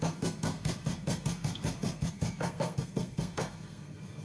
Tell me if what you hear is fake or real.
fake